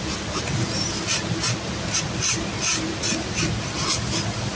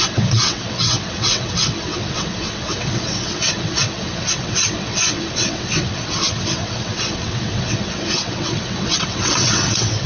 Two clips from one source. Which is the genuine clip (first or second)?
first